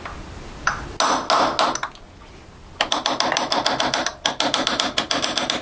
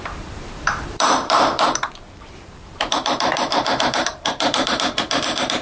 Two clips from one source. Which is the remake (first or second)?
second